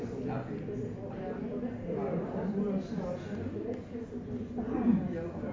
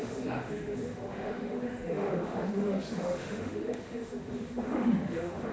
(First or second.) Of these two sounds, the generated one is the second